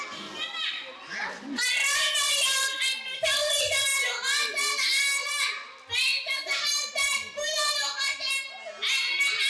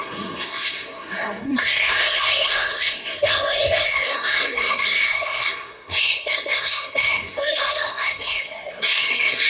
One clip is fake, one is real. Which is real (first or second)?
first